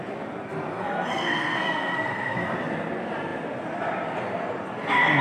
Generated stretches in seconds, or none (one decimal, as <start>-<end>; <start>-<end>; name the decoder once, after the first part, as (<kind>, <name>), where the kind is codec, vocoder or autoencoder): 0.7-2.5 (codec, SNAC)